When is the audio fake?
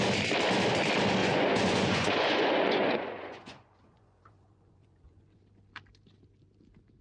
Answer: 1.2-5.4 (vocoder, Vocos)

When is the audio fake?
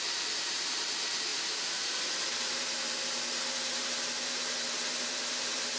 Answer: 0.0-5.8 (vocoder, BigVGAN v2)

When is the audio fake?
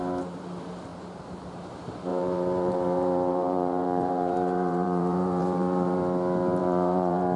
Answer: 0.9-1.7 (vocoder, BigVGAN v2); 2.1-6.0; 6.6-7.4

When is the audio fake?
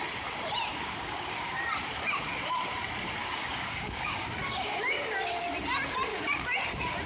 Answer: 0.7-1.6 (codec, DAC); 3.2-5.4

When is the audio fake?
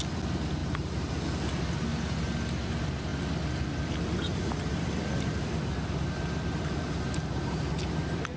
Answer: 0.6-1.1 (vocoder, BigVGAN v2)